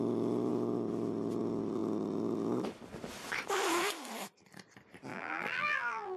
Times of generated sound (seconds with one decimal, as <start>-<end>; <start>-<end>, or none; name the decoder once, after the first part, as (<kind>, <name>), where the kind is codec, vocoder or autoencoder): 5.1-6.2 (vocoder, BigVGAN v2)

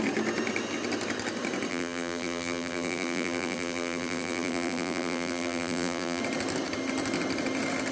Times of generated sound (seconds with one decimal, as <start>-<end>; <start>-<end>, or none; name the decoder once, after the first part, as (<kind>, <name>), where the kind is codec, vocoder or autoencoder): 1.7-6.2 (vocoder, BigVGAN v2)

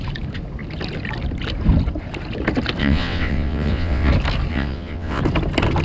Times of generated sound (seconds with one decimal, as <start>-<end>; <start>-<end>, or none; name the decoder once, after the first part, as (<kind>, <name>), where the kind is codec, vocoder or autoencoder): 2.8-4.1 (vocoder, WaveNeXt); 4.5-5.2

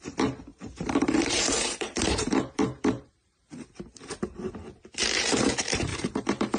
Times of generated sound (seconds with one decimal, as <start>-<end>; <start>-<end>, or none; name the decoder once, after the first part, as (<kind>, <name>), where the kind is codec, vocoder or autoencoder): 0.5-4.5 (vocoder, BigVGAN v2); 5.9-6.6

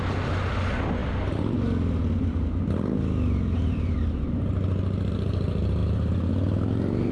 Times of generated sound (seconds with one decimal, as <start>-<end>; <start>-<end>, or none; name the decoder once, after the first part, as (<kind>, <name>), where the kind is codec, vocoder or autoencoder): none

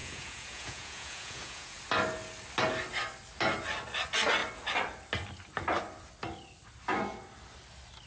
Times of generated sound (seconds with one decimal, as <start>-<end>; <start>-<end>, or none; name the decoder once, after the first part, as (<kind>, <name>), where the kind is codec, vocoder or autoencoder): 0.0-1.8 (vocoder, Vocos)

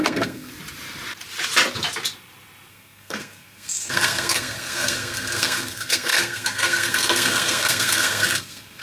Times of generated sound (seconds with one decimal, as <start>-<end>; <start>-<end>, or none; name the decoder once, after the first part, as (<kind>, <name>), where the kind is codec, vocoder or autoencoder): 0.0-0.5 (codec, SNAC); 2.7-8.8